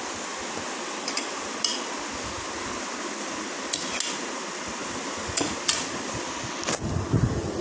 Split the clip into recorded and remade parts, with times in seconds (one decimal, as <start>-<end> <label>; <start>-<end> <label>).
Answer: 0.0-7.6 recorded